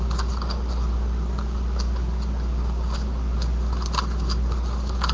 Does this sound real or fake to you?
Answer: real